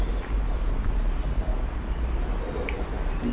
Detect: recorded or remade recorded